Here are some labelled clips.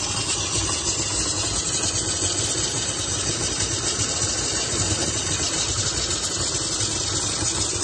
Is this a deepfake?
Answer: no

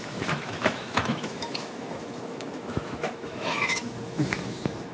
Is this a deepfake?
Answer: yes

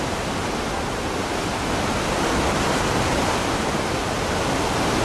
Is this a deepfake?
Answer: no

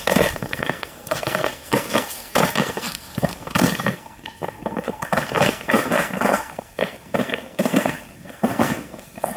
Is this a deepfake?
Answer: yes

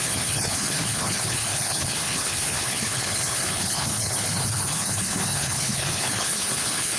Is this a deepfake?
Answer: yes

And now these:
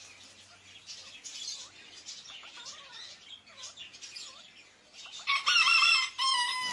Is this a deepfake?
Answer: no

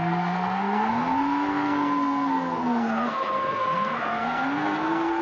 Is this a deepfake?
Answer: yes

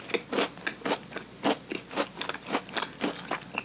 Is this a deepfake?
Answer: no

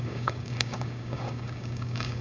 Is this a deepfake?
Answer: yes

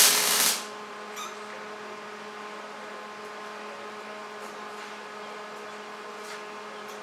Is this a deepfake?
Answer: no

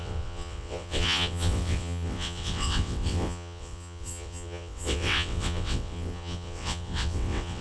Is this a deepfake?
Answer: yes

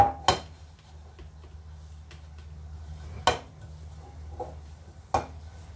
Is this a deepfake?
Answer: no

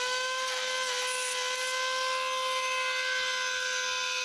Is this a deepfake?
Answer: no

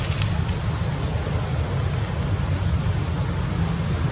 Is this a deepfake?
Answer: no